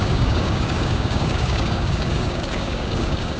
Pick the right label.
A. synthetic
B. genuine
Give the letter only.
A